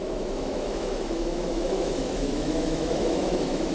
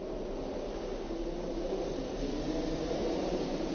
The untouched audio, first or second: second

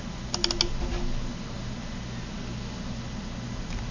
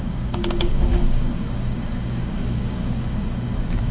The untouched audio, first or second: first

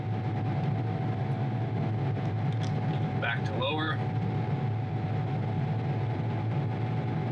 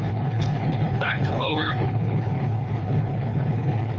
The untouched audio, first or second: first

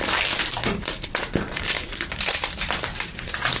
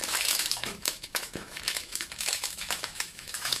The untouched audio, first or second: first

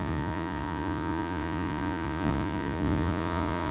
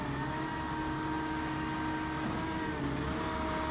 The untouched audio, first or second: second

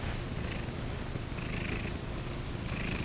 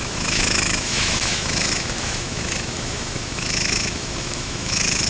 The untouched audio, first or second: first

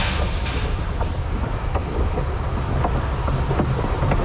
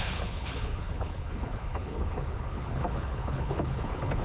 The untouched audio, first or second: first